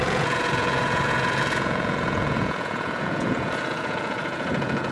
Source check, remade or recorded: remade